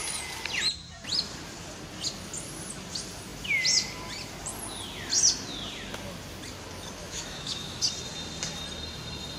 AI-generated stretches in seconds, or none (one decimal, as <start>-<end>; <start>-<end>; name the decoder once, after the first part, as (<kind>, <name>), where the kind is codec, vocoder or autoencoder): 7.0-7.8 (autoencoder, DAC-VAE)